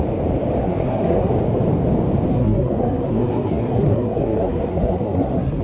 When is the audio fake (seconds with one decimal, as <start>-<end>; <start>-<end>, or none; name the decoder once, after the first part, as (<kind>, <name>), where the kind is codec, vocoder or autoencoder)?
0.6-1.3 (codec, SNAC); 2.3-5.6